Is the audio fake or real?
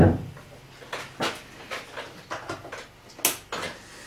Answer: real